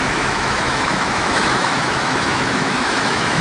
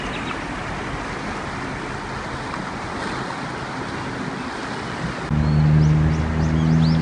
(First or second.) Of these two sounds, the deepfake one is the first